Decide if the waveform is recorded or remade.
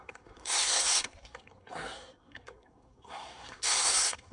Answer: remade